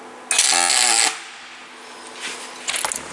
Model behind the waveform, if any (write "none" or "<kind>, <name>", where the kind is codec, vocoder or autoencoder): none